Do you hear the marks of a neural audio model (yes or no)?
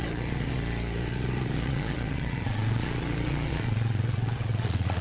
yes